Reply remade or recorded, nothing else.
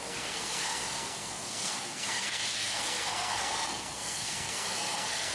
remade